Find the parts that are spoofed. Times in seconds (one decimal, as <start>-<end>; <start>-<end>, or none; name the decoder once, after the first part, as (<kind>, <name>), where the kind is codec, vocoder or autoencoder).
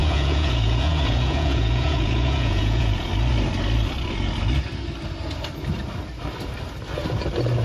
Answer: 0.0-3.1 (vocoder, Vocos)